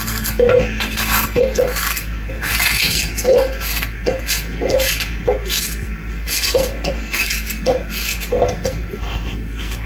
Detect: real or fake fake